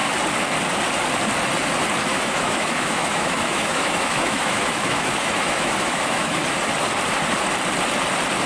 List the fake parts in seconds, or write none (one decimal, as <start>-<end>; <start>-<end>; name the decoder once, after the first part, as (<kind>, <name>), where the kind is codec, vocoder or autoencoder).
2.1-6.4 (autoencoder, DAC-VAE)